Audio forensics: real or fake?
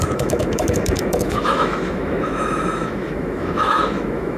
fake